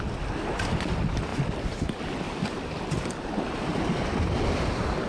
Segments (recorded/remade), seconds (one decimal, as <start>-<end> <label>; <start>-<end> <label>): 0.0-5.1 recorded